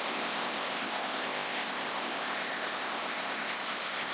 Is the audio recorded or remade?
remade